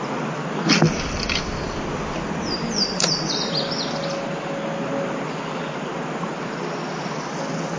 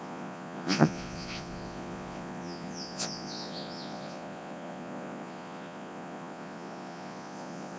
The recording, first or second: first